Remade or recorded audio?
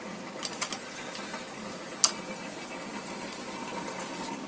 recorded